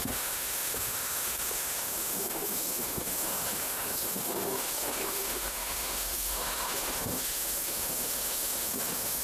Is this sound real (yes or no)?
no